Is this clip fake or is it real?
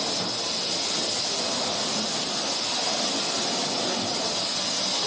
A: real